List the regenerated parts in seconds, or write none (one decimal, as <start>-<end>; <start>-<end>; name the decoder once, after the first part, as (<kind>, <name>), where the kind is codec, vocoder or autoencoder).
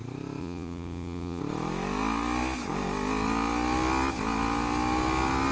0.4-1.4 (vocoder, Vocos)